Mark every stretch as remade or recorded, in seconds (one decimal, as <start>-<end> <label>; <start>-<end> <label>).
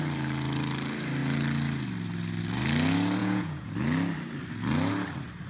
0.0-3.2 recorded; 3.2-3.7 remade; 3.7-5.5 recorded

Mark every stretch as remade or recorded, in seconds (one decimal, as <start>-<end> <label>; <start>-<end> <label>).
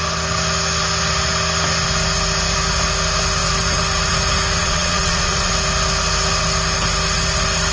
0.0-4.6 recorded; 4.6-5.5 remade; 5.5-7.7 recorded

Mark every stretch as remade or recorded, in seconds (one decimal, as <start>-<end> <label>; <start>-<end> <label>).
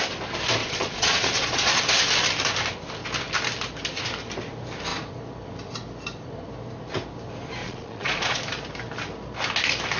0.0-0.6 recorded; 0.6-1.8 remade; 1.8-7.6 recorded; 7.6-8.4 remade; 8.4-10.0 recorded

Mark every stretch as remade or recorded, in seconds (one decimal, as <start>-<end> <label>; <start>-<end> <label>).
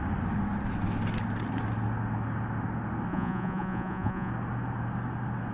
0.0-3.1 recorded; 3.1-4.3 remade; 4.3-5.5 recorded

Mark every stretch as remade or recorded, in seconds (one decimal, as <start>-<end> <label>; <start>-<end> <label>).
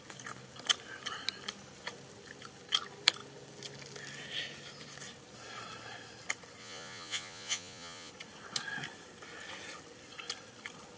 0.0-6.6 recorded; 6.6-8.1 remade; 8.1-11.0 recorded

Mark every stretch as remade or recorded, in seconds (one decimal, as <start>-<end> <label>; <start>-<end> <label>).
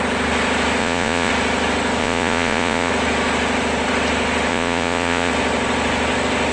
0.0-0.8 recorded; 0.8-1.3 remade; 1.3-2.0 recorded; 2.0-2.9 remade; 2.9-4.5 recorded; 4.5-5.3 remade; 5.3-6.5 recorded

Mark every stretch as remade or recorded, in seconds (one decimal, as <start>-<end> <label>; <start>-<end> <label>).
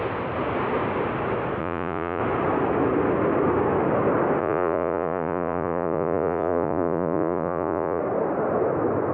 0.0-1.6 recorded; 1.6-2.2 remade; 2.2-4.4 recorded; 4.4-8.0 remade; 8.0-9.1 recorded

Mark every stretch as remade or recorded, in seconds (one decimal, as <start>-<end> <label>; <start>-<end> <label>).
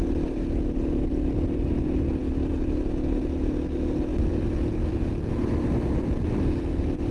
0.0-7.1 recorded